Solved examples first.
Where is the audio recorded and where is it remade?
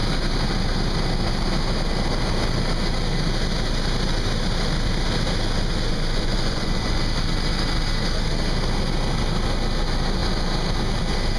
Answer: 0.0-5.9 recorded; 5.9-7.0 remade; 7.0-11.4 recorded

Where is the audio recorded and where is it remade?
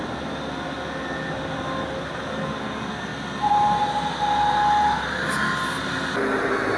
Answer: 0.0-6.8 recorded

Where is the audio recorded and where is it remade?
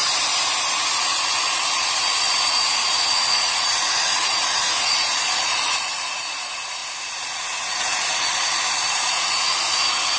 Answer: 0.0-0.7 recorded; 0.7-10.2 remade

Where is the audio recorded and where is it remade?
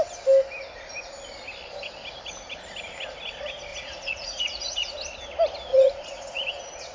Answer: 0.0-3.7 recorded; 3.7-4.9 remade; 4.9-5.7 recorded; 5.7-6.5 remade; 6.5-6.9 recorded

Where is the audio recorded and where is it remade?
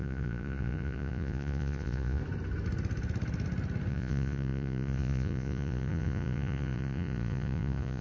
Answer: 0.0-2.2 remade; 2.2-3.9 recorded; 3.9-8.0 remade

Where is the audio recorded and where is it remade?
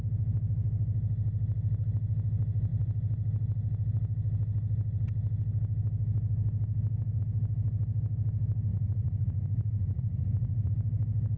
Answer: 0.0-8.7 recorded; 8.7-10.7 remade; 10.7-11.4 recorded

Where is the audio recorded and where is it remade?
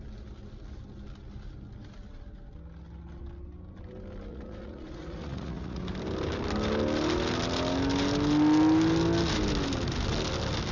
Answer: 0.0-4.3 recorded; 4.3-5.8 remade; 5.8-10.7 recorded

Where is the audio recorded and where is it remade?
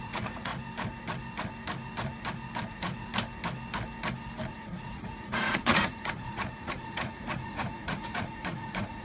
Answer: 0.0-0.5 remade; 0.5-2.7 recorded; 2.7-3.1 remade; 3.1-4.5 recorded; 4.5-9.0 remade